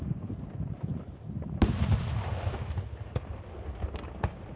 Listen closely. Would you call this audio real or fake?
real